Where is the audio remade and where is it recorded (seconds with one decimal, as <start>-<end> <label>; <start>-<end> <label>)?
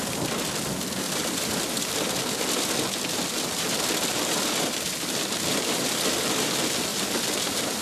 0.0-6.9 recorded; 6.9-7.8 remade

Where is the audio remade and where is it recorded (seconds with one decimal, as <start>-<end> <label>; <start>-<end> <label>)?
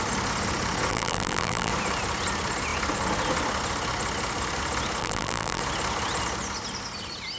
0.0-0.9 recorded; 0.9-1.7 remade; 1.7-5.0 recorded; 5.0-5.6 remade; 5.6-7.4 recorded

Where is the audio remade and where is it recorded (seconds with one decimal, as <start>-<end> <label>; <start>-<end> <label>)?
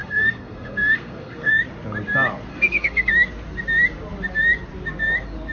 0.0-1.5 remade; 1.5-2.5 recorded; 2.5-3.1 remade; 3.1-5.5 recorded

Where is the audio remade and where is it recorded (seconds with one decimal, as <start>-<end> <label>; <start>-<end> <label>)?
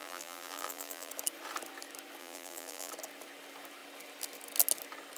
0.0-1.1 remade; 1.1-2.2 recorded; 2.2-2.9 remade; 2.9-5.2 recorded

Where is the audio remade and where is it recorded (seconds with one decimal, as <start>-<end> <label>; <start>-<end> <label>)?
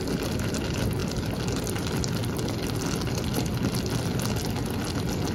0.0-1.0 recorded; 1.0-1.6 remade; 1.6-5.3 recorded